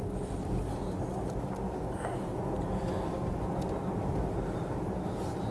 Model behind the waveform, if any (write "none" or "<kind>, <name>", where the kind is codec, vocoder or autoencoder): none